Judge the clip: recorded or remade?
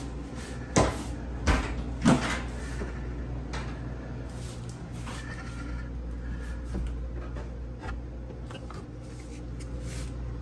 recorded